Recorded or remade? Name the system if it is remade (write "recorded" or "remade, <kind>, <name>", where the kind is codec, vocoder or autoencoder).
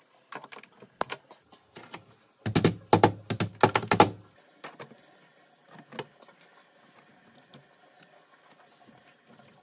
recorded